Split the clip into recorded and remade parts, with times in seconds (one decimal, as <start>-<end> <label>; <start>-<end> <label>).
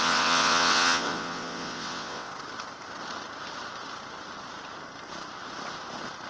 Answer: 0.0-2.3 remade; 2.3-6.3 recorded